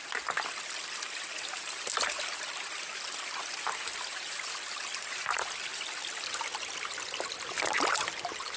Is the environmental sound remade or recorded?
recorded